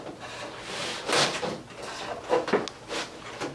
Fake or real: real